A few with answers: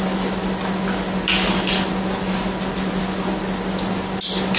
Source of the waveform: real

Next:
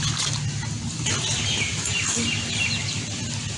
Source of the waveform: real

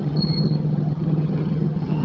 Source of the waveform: fake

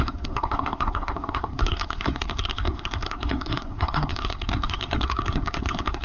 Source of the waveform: fake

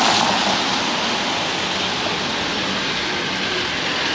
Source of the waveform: real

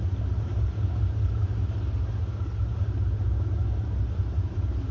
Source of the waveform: real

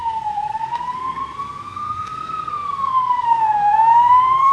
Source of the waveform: fake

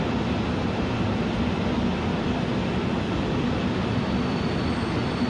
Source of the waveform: real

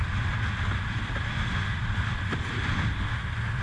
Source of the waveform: real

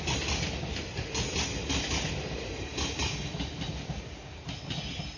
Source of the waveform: real